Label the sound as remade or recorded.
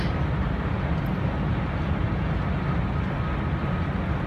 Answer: recorded